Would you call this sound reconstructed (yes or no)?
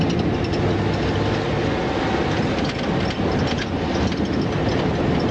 no